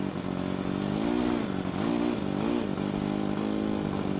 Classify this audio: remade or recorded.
recorded